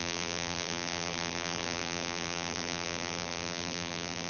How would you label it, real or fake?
fake